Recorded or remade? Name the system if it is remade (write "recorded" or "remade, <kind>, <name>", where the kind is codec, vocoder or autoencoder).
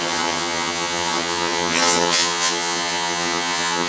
remade, vocoder, HiFi-GAN